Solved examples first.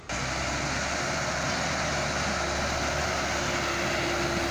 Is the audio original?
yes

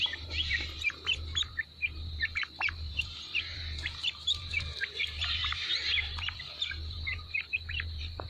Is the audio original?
no